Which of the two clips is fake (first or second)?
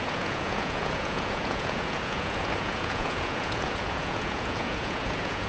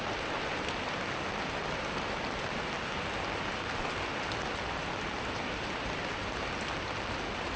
first